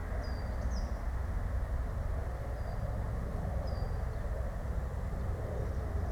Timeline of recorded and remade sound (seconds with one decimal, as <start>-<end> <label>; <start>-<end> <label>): 0.0-6.1 recorded